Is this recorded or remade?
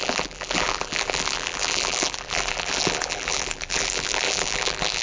remade